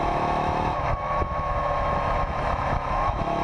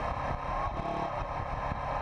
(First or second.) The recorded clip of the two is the second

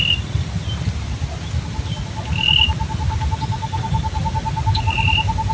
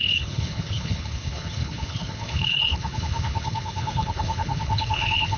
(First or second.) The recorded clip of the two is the first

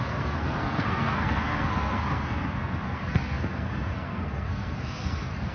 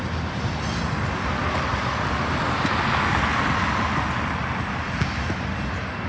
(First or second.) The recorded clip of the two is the second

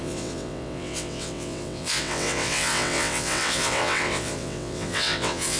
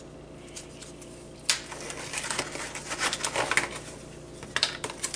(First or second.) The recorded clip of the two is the second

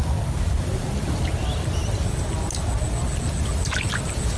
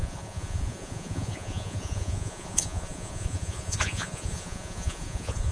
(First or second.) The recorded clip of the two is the first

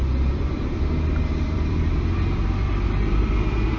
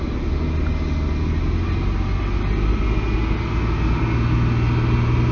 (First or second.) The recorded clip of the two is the second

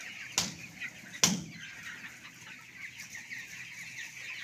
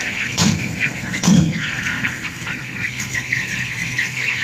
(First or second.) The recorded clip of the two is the first